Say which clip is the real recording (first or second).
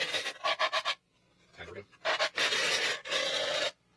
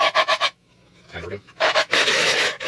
first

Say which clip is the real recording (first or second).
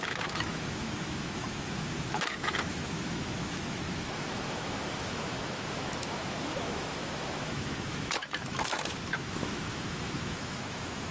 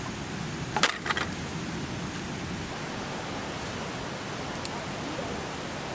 second